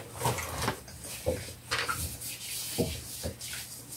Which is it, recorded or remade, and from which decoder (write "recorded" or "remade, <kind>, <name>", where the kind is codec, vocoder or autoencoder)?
recorded